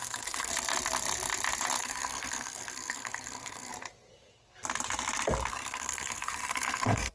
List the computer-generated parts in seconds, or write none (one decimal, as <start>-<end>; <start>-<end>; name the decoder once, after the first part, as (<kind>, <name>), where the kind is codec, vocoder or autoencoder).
0.0-0.5 (codec, SNAC); 1.8-3.7; 5.5-7.1